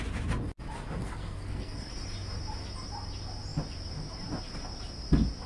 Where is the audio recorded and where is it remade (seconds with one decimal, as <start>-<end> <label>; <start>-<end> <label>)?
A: 0.0-1.0 recorded; 1.0-1.9 remade; 1.9-5.5 recorded